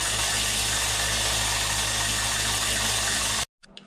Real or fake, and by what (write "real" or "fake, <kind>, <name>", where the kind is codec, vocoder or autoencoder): real